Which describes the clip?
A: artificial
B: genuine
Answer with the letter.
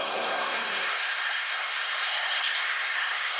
A